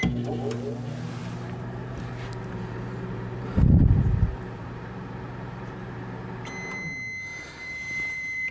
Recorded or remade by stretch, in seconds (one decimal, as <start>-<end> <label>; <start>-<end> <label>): 0.0-1.2 recorded; 1.2-6.0 remade; 6.0-7.3 recorded; 7.3-8.5 remade